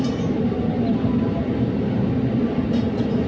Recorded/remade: recorded